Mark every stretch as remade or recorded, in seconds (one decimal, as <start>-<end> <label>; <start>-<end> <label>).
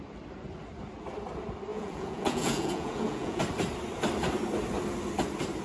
0.0-1.7 recorded; 1.7-3.4 remade; 3.4-5.6 recorded